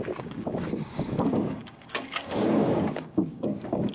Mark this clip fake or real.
fake